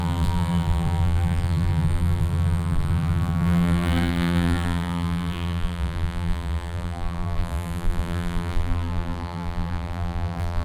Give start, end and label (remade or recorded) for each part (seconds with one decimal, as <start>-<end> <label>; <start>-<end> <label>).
0.0-10.6 remade